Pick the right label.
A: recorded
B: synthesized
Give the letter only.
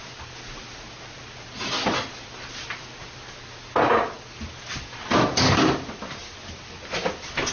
A